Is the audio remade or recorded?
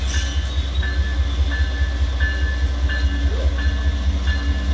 recorded